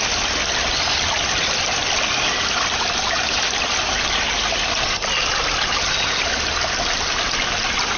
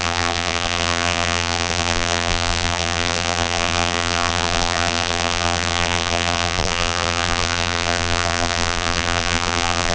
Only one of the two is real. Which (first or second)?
first